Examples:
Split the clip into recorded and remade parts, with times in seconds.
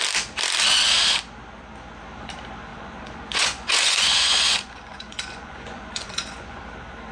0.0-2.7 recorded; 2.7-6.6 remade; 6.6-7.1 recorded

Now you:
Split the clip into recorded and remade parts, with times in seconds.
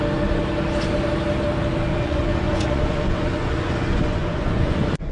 0.0-1.9 recorded; 1.9-5.1 remade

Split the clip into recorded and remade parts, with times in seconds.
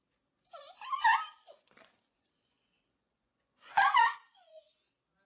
0.0-1.4 recorded; 1.4-4.6 remade; 4.6-5.3 recorded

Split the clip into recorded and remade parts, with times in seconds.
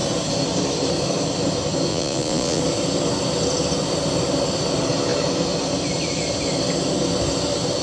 0.0-1.9 recorded; 1.9-2.6 remade; 2.6-7.8 recorded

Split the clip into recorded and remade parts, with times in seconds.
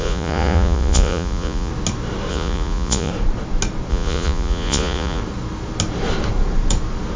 0.0-1.7 remade; 1.7-2.3 recorded; 2.3-3.1 remade; 3.1-3.9 recorded; 3.9-5.2 remade; 5.2-7.2 recorded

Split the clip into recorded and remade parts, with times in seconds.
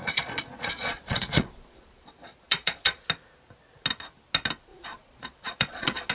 0.0-3.0 remade; 3.0-4.7 recorded; 4.7-6.1 remade